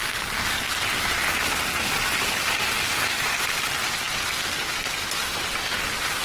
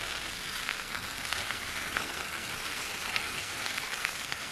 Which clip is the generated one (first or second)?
second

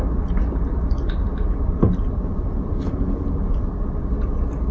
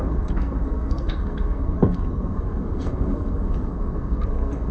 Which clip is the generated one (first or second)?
second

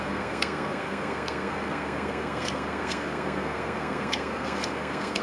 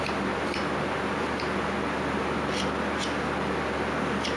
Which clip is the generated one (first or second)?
first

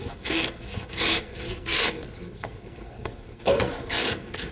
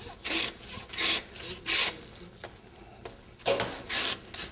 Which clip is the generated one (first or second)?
first